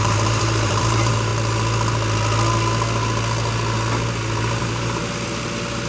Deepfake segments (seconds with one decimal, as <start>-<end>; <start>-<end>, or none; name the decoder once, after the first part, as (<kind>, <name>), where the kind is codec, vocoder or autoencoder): 0.0-1.3 (vocoder, BigVGAN v2); 4.6-5.0